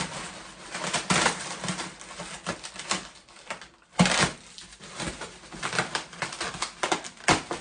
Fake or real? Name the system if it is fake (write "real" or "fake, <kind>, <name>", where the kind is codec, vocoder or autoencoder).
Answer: real